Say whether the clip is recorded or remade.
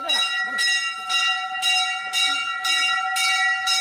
recorded